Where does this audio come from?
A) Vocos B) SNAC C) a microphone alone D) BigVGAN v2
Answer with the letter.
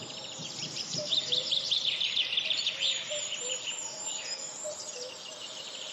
D